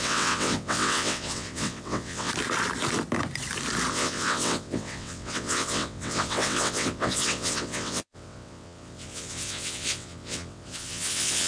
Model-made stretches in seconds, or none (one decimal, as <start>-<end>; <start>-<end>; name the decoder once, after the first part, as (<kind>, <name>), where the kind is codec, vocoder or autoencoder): 0.0-2.3 (vocoder, WaveNeXt); 3.9-11.5